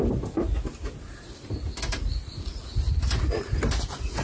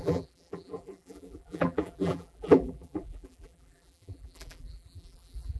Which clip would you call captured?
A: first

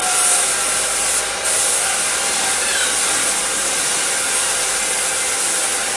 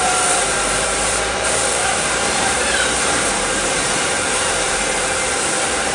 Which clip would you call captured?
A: first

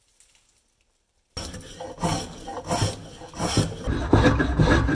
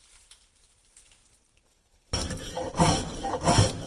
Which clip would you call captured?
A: first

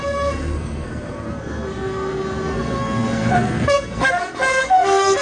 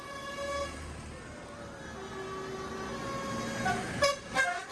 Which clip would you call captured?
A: second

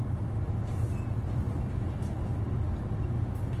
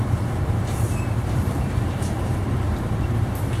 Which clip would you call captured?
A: first